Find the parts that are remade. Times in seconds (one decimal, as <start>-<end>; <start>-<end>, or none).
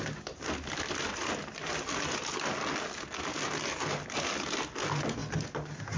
none